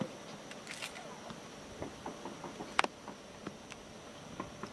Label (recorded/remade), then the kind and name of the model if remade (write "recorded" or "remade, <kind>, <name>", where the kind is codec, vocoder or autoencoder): recorded